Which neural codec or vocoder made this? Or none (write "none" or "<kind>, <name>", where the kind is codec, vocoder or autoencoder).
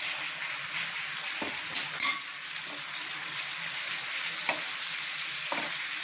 none